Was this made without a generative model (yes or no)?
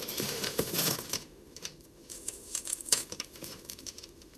no